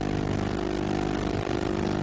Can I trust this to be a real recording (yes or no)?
yes